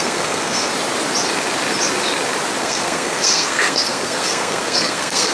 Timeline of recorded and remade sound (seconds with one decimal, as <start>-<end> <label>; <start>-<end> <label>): 0.0-0.7 remade; 0.7-2.6 recorded; 2.6-5.3 remade